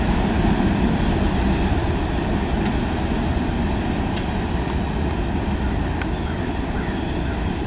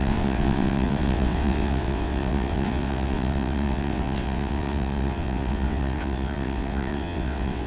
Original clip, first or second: first